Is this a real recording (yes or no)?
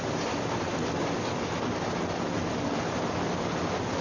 yes